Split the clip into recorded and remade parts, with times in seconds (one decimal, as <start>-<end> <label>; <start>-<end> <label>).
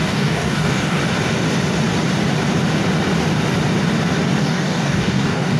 0.0-1.0 remade; 1.0-4.4 recorded; 4.4-5.6 remade